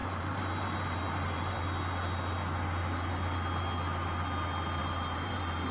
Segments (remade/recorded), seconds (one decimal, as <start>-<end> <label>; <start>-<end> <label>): 0.0-1.6 remade; 1.6-4.8 recorded; 4.8-5.7 remade